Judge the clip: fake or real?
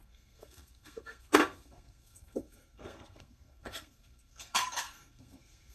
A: fake